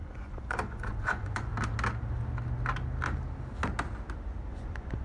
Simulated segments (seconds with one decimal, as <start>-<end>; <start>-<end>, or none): 0.0-1.5; 4.5-5.0